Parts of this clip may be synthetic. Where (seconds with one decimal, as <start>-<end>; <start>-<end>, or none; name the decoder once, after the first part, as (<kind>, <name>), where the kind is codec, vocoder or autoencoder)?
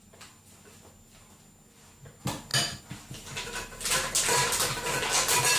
none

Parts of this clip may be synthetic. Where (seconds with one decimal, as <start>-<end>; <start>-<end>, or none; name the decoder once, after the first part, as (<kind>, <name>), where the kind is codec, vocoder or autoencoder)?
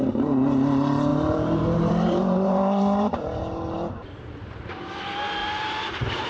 1.1-4.9 (vocoder, BigVGAN v2); 5.4-6.3